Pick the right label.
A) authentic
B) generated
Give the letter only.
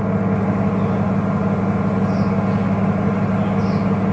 A